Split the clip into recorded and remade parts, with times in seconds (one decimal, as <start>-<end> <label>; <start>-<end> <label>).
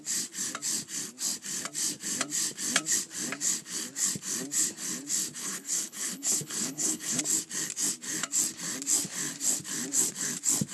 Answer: 0.0-5.4 recorded; 5.4-7.2 remade; 7.2-10.7 recorded